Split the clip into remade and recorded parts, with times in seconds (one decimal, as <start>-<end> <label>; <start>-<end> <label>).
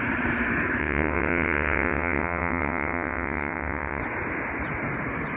0.0-0.8 recorded; 0.8-4.0 remade; 4.0-5.4 recorded